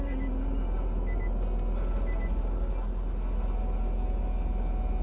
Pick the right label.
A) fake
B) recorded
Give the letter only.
B